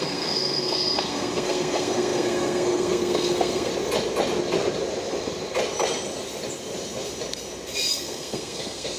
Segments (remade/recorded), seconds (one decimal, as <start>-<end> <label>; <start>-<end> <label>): 0.0-3.7 remade; 3.7-7.9 recorded; 7.9-9.0 remade